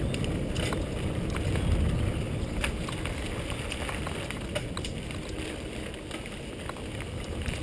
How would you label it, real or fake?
real